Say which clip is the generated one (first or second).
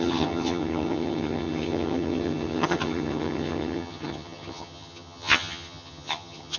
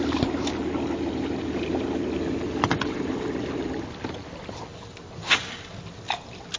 first